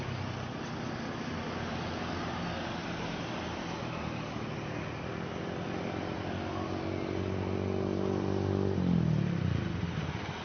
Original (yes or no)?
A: yes